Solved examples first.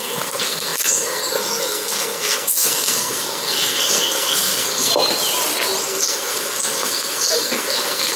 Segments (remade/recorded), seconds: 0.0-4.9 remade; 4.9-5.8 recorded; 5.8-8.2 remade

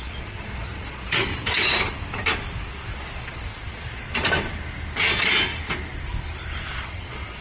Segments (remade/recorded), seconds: 0.0-1.3 remade; 1.3-2.7 recorded; 2.7-4.0 remade; 4.0-6.7 recorded; 6.7-7.4 remade

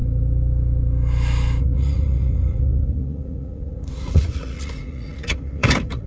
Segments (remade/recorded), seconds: 0.0-1.6 recorded; 1.6-6.1 remade

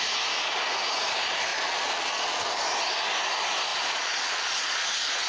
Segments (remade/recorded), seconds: 0.0-1.5 recorded; 1.5-2.6 remade; 2.6-3.7 recorded; 3.7-5.3 remade

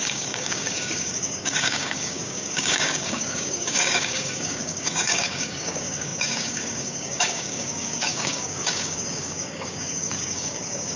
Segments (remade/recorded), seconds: 0.0-11.0 remade

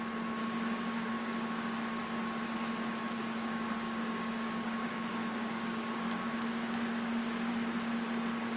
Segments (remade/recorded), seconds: 0.0-0.4 recorded; 0.4-2.0 remade; 2.0-3.2 recorded; 3.2-7.5 remade; 7.5-8.6 recorded